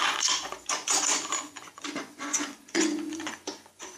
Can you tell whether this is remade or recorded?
remade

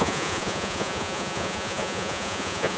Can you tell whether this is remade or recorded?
remade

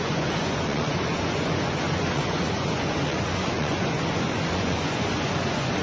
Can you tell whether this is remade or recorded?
remade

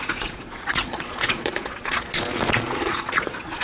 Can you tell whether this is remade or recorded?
remade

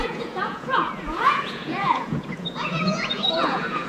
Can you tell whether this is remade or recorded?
remade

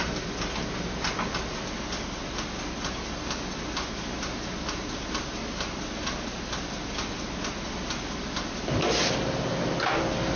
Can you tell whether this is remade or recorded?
recorded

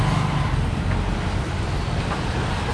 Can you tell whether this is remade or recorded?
recorded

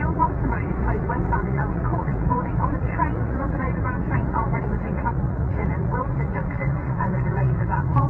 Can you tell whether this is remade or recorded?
remade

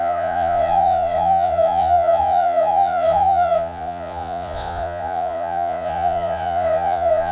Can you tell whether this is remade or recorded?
remade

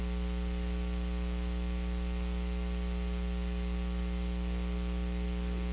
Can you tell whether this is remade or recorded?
recorded